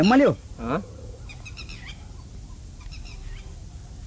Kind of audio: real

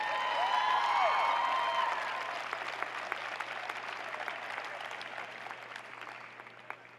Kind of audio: real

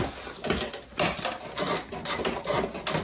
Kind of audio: real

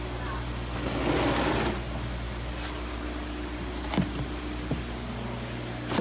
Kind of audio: real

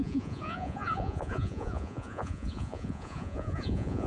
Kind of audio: fake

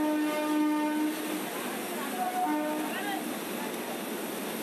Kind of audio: real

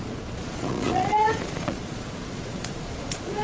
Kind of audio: fake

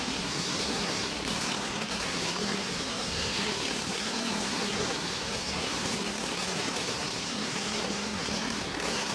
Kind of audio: fake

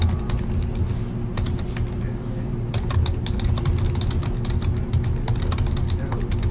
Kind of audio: real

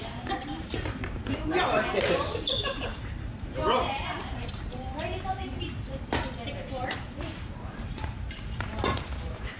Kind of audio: fake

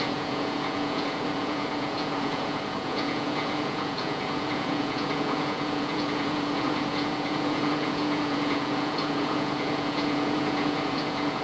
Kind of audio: fake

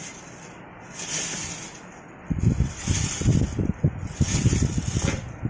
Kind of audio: real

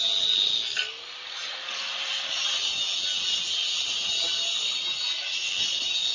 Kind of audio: real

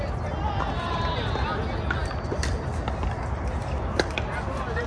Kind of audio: real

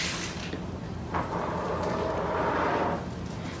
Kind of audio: real